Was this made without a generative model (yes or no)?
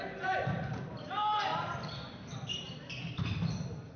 no